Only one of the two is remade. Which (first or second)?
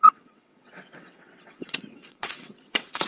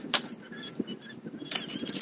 first